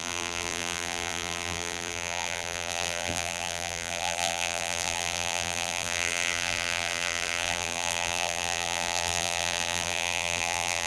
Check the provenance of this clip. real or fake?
fake